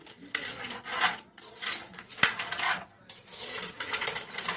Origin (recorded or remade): remade